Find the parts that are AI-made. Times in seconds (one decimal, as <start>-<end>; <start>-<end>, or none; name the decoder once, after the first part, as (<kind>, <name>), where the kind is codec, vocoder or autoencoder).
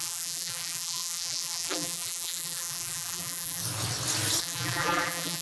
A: 0.0-3.6 (vocoder, BigVGAN v2); 4.4-5.4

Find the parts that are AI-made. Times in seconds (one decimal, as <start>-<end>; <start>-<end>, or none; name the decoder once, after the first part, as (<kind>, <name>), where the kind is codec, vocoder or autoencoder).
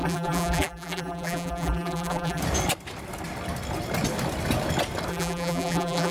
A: 0.0-2.4 (vocoder, BigVGAN v2); 5.1-6.1